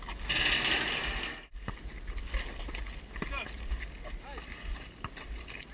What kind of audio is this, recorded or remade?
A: recorded